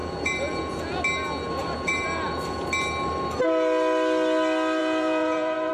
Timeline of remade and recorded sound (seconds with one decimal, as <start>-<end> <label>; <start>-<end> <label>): 0.0-1.0 remade; 1.0-1.6 recorded; 1.6-2.7 remade; 2.7-4.8 recorded; 4.8-5.7 remade